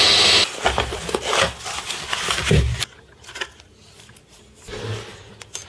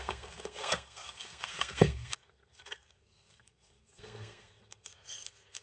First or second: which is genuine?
first